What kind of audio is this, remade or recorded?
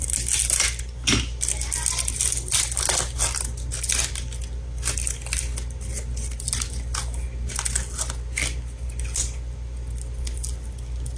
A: recorded